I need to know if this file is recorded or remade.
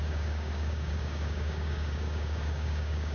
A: remade